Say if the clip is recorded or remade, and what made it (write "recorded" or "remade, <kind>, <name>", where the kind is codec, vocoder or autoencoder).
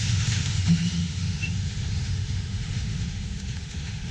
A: remade, autoencoder, DAC-VAE